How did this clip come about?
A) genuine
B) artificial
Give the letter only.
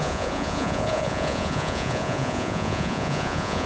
B